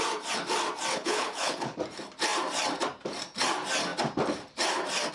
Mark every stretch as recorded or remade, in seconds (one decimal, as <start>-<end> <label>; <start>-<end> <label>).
0.0-0.9 recorded; 0.9-1.8 remade; 1.8-5.1 recorded

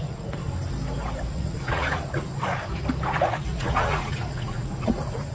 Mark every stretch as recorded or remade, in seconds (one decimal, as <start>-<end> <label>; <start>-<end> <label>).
0.0-0.4 remade; 0.4-1.3 recorded; 1.3-2.3 remade; 2.3-3.2 recorded; 3.2-5.3 remade

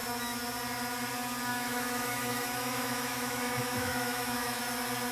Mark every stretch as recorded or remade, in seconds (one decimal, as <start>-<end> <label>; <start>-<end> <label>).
0.0-1.5 recorded; 1.5-4.6 remade; 4.6-5.1 recorded

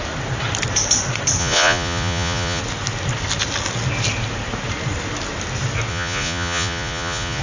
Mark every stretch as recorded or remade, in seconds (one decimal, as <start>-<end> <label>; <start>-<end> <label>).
0.0-1.4 recorded; 1.4-2.6 remade; 2.6-5.9 recorded; 5.9-7.4 remade

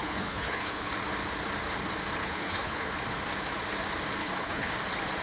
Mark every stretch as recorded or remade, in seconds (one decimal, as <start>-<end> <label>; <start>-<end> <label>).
0.0-0.9 remade; 0.9-2.2 recorded; 2.2-2.9 remade; 2.9-4.2 recorded; 4.2-4.7 remade; 4.7-5.2 recorded

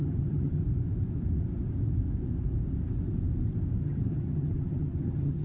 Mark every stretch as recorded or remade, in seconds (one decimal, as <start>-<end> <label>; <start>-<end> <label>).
0.0-0.6 remade; 0.6-3.8 recorded; 3.8-5.4 remade

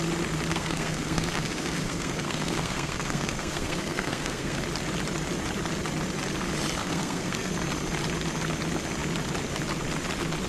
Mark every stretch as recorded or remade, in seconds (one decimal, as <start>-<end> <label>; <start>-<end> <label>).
0.0-0.5 recorded; 0.5-4.6 remade; 4.6-6.8 recorded; 6.8-7.5 remade; 7.5-10.5 recorded